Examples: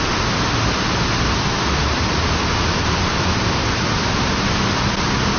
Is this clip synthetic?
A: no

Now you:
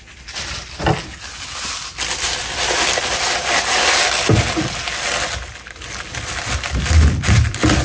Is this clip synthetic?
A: no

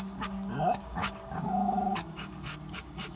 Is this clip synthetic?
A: yes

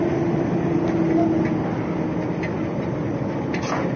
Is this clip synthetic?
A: no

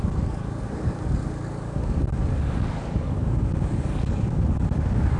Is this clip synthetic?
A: yes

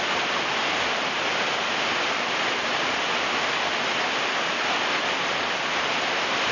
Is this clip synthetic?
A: no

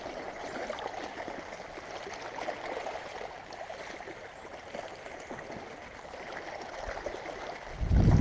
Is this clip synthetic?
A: no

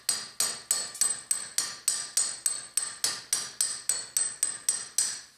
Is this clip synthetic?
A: no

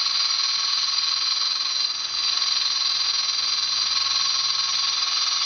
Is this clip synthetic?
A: no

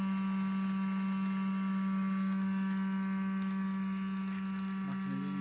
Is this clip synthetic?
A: no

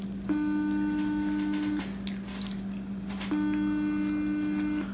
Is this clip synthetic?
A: no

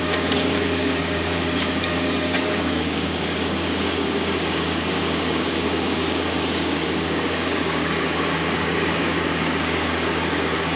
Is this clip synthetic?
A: yes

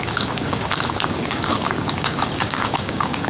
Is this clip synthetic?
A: yes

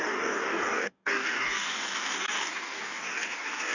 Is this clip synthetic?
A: yes